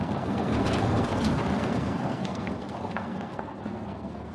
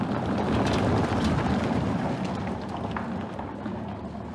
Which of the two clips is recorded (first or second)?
second